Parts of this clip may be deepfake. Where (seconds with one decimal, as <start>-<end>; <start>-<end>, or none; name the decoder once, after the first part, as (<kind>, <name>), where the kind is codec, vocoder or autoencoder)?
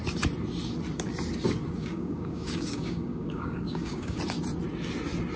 1.8-4.2 (codec, DAC)